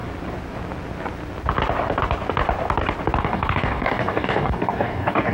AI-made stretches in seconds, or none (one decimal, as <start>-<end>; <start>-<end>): 3.2-5.3